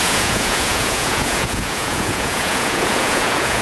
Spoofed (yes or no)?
yes